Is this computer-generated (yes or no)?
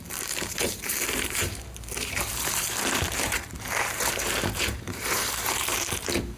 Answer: yes